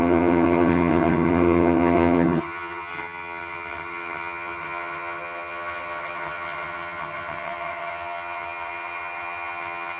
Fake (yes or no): yes